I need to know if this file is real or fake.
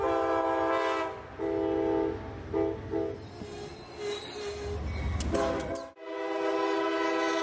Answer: real